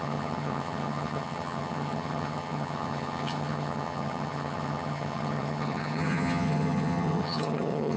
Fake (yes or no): yes